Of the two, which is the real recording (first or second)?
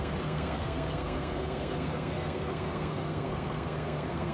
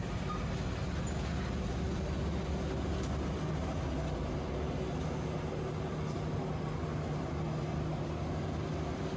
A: second